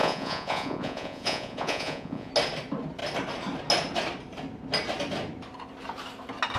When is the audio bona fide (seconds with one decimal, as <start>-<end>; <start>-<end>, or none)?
2.3-6.6